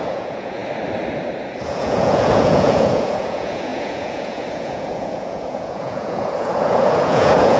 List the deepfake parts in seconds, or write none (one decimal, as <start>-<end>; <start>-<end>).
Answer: 0.0-0.6; 1.7-7.6

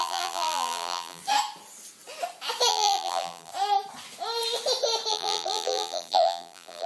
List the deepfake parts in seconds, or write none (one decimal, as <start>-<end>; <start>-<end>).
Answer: 0.0-1.2; 2.7-3.5; 5.1-6.9

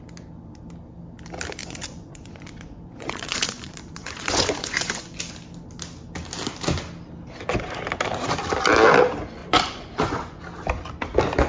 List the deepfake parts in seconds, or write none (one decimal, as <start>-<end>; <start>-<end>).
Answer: 1.6-5.2; 9.4-10.4

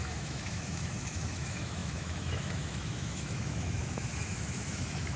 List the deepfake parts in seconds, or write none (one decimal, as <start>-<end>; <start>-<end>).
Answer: 0.0-5.2

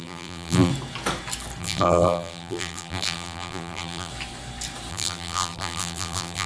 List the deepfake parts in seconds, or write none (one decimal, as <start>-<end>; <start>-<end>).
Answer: 0.0-0.7; 1.6-4.1; 4.9-6.5

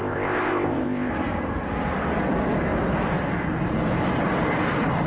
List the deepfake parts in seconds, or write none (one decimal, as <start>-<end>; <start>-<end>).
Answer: 0.0-1.1